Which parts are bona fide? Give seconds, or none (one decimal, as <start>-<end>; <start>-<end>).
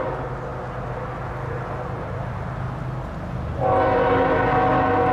0.0-5.1